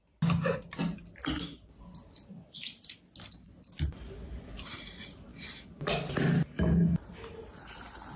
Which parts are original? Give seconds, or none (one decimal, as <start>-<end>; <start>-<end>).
0.0-8.2